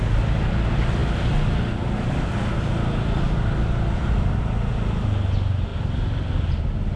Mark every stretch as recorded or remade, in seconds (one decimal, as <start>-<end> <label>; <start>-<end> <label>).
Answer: 0.0-7.0 recorded